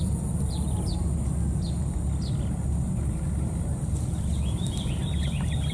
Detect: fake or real real